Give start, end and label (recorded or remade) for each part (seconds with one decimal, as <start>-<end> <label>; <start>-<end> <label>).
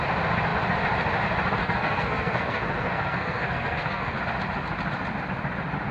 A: 0.0-1.6 recorded; 1.6-4.2 remade; 4.2-5.9 recorded